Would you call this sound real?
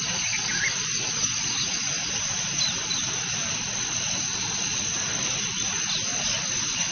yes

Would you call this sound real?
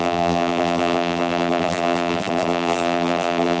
no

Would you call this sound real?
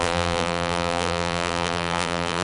no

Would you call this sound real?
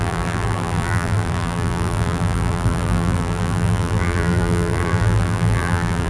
no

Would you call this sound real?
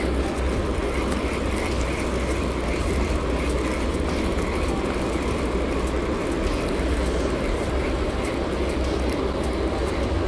yes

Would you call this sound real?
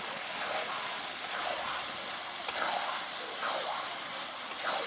yes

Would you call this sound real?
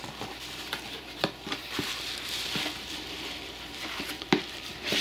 no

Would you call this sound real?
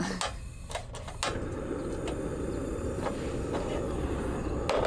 yes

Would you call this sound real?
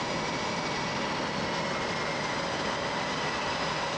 yes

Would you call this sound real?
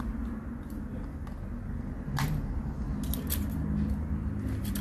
yes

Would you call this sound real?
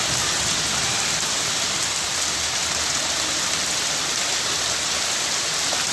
yes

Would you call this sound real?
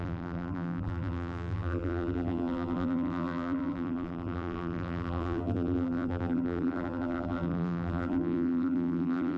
no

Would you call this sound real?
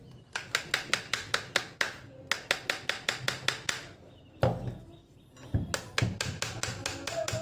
yes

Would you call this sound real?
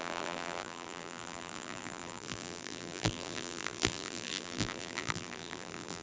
no